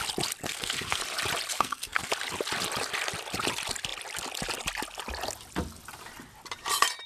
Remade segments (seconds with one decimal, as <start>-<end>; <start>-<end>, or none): 0.4-1.0; 1.5-2.1